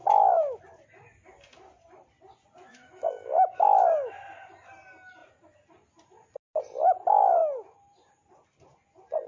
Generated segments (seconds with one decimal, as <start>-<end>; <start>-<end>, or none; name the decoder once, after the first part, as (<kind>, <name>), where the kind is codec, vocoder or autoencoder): 0.0-0.6 (autoencoder, DAC-VAE); 2.7-4.2